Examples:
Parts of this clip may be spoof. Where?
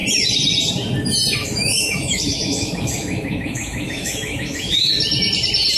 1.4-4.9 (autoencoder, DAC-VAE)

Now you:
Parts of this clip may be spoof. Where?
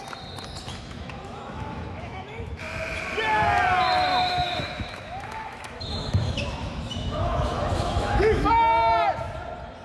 0.7-2.5 (autoencoder, DAC-VAE); 4.1-8.5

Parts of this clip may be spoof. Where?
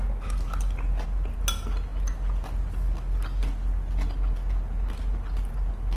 none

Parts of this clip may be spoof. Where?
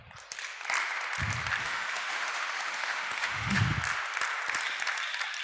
1.6-3.6 (autoencoder, DAC-VAE)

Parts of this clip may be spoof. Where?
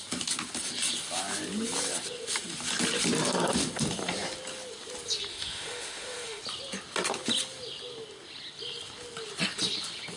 5.3-6.4 (autoencoder, DAC-VAE)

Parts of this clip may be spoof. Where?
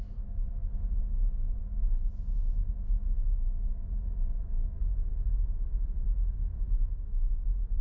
0.0-7.8 (autoencoder, DAC-VAE)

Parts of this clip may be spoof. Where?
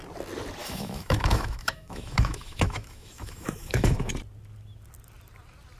0.6-4.1 (autoencoder, DAC-VAE)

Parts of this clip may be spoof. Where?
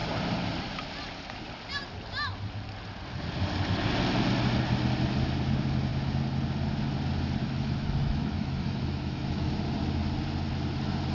7.4-9.5 (autoencoder, DAC-VAE)